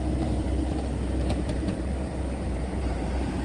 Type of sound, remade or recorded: remade